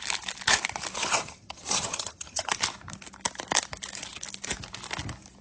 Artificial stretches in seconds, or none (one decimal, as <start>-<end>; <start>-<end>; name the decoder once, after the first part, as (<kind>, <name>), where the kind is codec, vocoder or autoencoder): 1.0-2.5 (vocoder, HiFi-GAN)